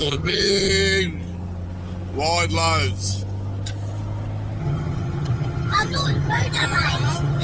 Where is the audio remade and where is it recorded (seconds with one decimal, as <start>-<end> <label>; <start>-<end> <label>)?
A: 0.0-0.7 remade; 0.7-4.6 recorded; 4.6-7.4 remade